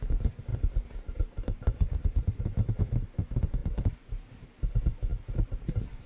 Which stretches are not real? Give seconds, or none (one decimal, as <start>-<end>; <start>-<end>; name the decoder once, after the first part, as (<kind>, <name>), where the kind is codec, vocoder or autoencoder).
0.5-2.4 (vocoder, BigVGAN v2)